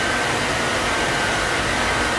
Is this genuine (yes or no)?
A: no